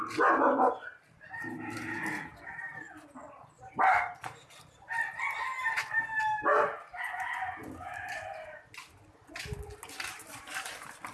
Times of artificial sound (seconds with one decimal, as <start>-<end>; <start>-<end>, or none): none